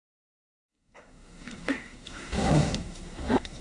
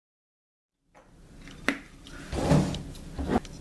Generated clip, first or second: first